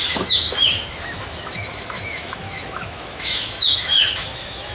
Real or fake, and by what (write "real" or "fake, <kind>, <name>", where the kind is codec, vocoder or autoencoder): fake, autoencoder, DAC-VAE